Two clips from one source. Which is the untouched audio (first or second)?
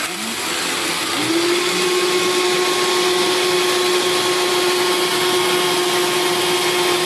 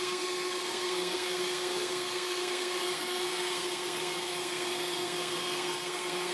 first